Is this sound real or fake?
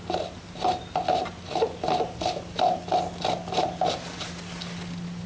real